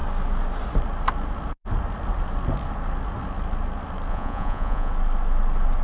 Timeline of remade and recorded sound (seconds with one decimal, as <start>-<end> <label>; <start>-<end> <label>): 0.0-4.1 recorded; 4.1-4.9 remade; 4.9-5.8 recorded